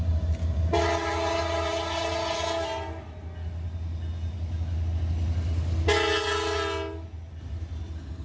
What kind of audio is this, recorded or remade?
recorded